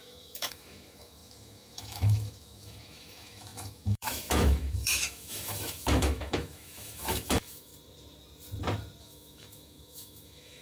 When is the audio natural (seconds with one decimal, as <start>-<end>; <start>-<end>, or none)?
7.7-9.0